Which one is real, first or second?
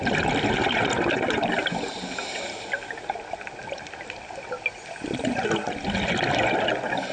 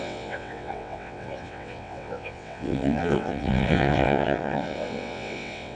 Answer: first